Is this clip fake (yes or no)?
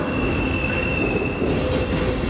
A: no